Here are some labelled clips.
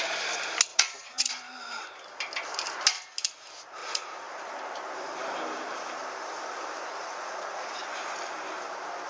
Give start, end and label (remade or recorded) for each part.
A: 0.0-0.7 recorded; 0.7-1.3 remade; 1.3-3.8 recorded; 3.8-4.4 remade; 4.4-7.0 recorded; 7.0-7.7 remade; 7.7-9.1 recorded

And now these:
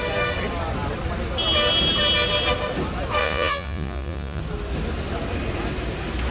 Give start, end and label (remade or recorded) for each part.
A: 0.0-3.2 recorded; 3.2-4.4 remade; 4.4-6.3 recorded

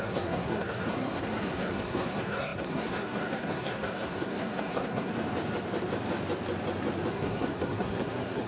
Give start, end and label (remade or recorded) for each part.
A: 0.0-5.1 remade; 5.1-7.1 recorded; 7.1-8.5 remade

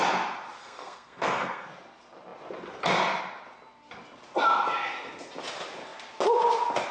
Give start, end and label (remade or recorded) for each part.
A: 0.0-0.6 recorded; 0.6-1.7 remade; 1.7-6.9 recorded

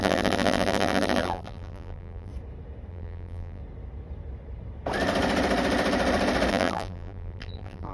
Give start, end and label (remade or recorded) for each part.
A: 0.0-2.3 remade; 2.3-2.9 recorded; 2.9-3.6 remade; 3.6-6.5 recorded; 6.5-7.9 remade

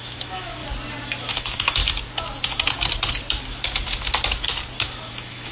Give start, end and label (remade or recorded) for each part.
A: 0.0-0.6 remade; 0.6-1.3 recorded; 1.3-1.8 remade; 1.8-5.1 recorded; 5.1-5.5 remade

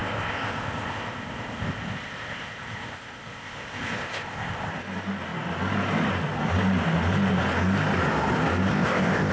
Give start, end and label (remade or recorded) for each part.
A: 0.0-4.7 remade; 4.7-8.7 recorded; 8.7-9.3 remade

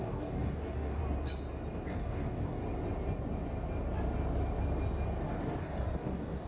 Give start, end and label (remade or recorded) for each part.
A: 0.0-1.0 remade; 1.0-1.9 recorded; 1.9-2.6 remade; 2.6-5.6 recorded; 5.6-6.5 remade